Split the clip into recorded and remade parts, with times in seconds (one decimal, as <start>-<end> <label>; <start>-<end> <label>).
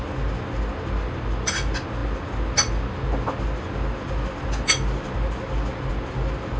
0.0-6.6 recorded